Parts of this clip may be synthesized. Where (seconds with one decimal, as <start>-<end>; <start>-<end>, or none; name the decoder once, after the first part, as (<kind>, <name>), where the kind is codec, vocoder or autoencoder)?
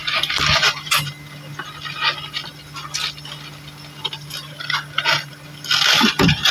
0.0-1.1 (vocoder, BigVGAN v2)